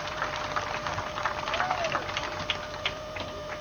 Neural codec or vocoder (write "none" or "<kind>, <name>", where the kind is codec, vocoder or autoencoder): vocoder, BigVGAN v2